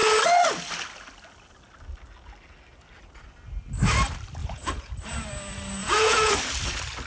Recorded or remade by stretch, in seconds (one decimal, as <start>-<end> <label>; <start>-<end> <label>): 0.0-4.4 recorded; 4.4-4.9 remade; 4.9-5.8 recorded; 5.8-6.3 remade; 6.3-7.1 recorded